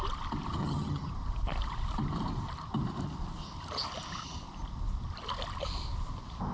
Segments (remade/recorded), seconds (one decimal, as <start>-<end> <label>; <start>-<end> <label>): 0.0-0.6 recorded; 0.6-1.1 remade; 1.1-6.5 recorded

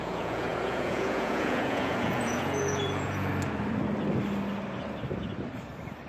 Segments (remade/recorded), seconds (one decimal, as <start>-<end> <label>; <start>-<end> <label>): 0.0-3.3 remade; 3.3-6.1 recorded

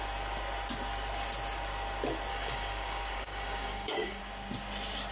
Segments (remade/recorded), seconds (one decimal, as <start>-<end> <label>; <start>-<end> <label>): 0.0-2.3 recorded; 2.3-4.2 remade; 4.2-5.1 recorded

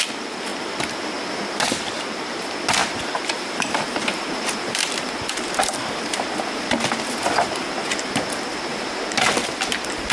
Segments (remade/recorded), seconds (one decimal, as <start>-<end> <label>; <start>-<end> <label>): 0.0-0.5 recorded; 0.5-1.1 remade; 1.1-2.8 recorded; 2.8-4.9 remade; 4.9-8.7 recorded; 8.7-9.3 remade; 9.3-10.1 recorded

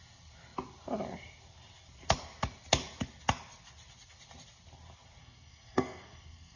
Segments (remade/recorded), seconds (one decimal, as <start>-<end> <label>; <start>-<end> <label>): 0.0-5.2 recorded; 5.2-6.6 remade

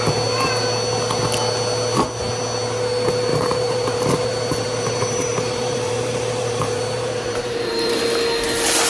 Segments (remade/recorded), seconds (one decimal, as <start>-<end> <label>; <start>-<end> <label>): 0.0-3.3 recorded; 3.3-8.0 remade; 8.0-8.9 recorded

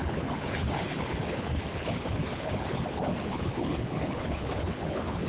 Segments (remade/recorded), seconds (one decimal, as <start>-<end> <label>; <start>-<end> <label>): 0.0-5.3 remade

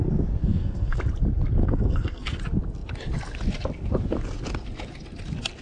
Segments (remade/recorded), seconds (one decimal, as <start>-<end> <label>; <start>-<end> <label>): 0.0-0.4 recorded; 0.4-1.0 remade; 1.0-1.6 recorded; 1.6-2.4 remade; 2.4-5.6 recorded